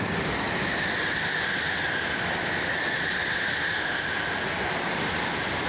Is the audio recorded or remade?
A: recorded